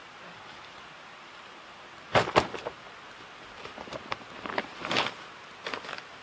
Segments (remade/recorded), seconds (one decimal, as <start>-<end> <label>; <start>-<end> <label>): 0.0-5.4 remade; 5.4-6.2 recorded